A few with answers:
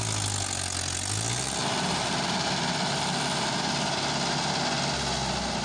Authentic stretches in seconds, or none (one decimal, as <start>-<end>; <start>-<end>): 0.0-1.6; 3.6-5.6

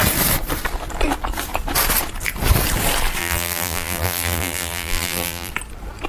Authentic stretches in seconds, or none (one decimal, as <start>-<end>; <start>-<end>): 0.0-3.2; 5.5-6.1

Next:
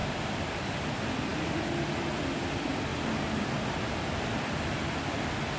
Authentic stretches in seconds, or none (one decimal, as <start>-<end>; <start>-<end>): 0.6-5.6